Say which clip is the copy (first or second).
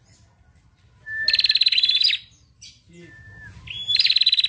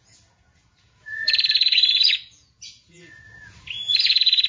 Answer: second